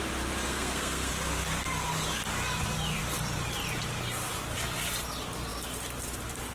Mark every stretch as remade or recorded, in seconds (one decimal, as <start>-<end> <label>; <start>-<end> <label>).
0.0-0.5 recorded; 0.5-1.1 remade; 1.1-6.5 recorded